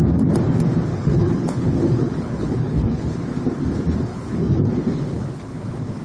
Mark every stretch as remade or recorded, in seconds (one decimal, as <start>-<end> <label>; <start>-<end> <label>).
0.0-0.9 recorded; 0.9-3.2 remade; 3.2-4.1 recorded; 4.1-6.0 remade